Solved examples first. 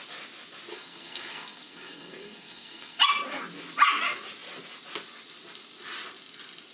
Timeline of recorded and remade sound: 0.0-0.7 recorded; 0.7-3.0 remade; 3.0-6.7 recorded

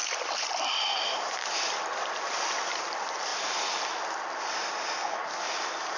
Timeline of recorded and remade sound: 0.0-6.0 recorded

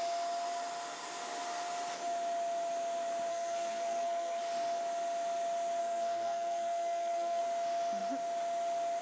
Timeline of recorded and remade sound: 0.0-3.3 recorded; 3.3-4.4 remade; 4.4-5.8 recorded; 5.8-7.4 remade; 7.4-9.0 recorded

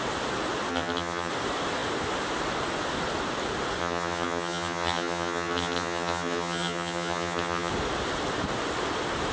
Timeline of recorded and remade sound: 0.0-0.7 recorded; 0.7-1.3 remade; 1.3-3.8 recorded; 3.8-7.7 remade; 7.7-9.3 recorded

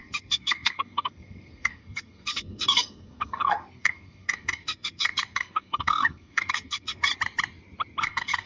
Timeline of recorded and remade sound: 0.0-7.1 remade; 7.1-8.0 recorded; 8.0-8.5 remade

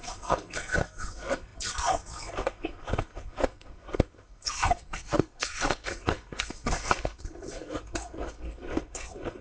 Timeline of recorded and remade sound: 0.0-9.4 remade

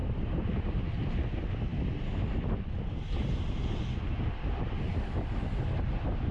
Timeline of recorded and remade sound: 0.0-1.0 remade; 1.0-6.3 recorded

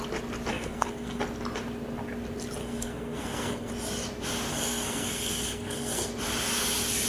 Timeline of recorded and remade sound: 0.0-0.5 recorded; 0.5-1.2 remade; 1.2-2.6 recorded; 2.6-3.7 remade; 3.7-4.5 recorded; 4.5-6.1 remade; 6.1-7.1 recorded